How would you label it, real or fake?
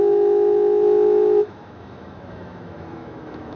fake